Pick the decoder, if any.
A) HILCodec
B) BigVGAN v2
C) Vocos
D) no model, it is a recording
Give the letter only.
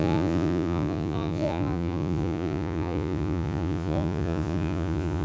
C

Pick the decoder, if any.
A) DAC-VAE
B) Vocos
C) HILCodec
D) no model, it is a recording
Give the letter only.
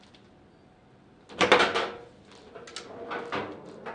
D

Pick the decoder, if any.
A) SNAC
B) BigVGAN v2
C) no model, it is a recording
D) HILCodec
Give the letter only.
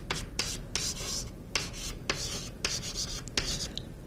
C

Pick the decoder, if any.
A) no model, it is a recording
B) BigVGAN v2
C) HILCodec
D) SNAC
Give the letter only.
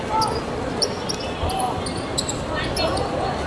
A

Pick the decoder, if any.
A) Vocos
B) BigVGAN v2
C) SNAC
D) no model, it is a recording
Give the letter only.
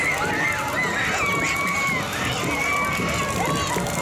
D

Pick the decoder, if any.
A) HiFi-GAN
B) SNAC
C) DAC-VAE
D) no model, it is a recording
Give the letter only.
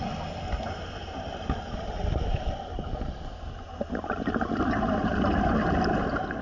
D